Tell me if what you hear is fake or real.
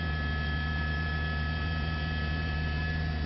real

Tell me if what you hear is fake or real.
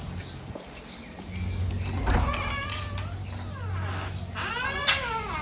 real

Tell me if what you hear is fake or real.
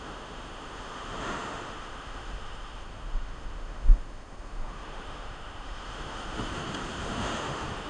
fake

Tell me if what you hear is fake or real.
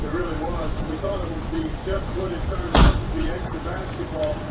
fake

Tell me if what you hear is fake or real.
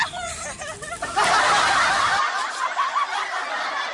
real